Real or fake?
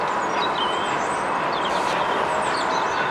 real